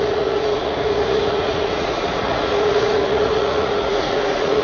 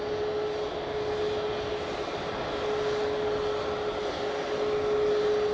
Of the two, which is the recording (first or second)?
second